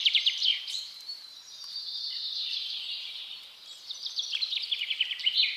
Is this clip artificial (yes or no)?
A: yes